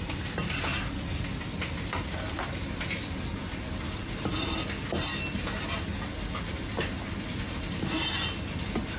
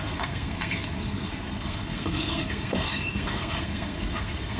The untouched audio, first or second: first